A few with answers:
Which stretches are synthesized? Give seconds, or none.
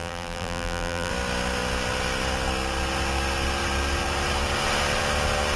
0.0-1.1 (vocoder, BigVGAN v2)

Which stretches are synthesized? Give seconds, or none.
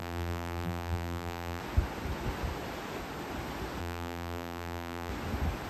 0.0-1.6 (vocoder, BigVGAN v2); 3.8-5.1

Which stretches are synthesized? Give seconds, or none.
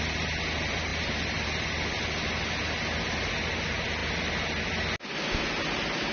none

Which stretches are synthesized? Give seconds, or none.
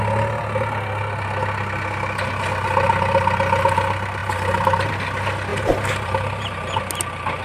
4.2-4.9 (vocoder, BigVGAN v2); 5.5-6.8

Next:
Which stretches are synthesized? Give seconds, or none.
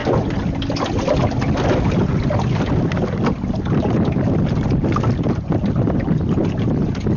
none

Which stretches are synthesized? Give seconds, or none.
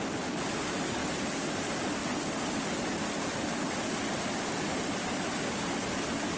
none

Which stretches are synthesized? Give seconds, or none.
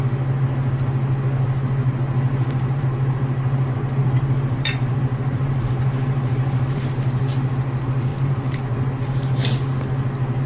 2.3-6.9 (vocoder, BigVGAN v2); 8.1-8.6